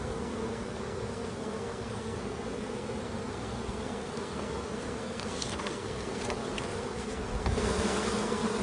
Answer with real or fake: fake